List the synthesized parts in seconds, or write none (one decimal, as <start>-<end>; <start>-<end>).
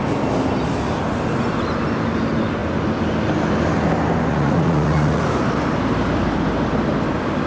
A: 4.3-5.2